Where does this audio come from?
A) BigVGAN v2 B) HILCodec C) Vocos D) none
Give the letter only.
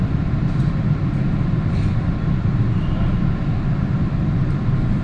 D